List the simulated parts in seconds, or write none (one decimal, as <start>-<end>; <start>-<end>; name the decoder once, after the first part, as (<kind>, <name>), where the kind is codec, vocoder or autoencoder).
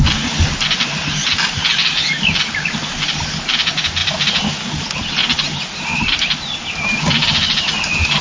none